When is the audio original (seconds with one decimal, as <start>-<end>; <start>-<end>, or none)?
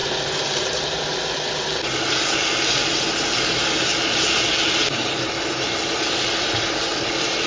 1.6-7.5